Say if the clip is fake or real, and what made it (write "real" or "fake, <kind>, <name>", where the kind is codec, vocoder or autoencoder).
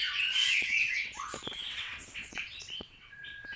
fake, vocoder, WaveNeXt